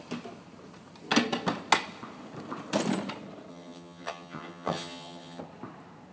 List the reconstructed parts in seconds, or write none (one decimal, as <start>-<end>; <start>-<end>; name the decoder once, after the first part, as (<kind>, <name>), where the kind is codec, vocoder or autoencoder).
3.5-5.4 (vocoder, HiFi-GAN)